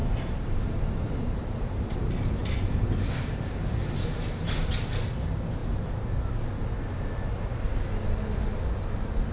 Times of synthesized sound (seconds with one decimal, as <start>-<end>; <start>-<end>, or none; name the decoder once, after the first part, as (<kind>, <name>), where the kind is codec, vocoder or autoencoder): 0.0-2.0 (vocoder, BigVGAN v2); 2.4-4.6; 5.6-6.1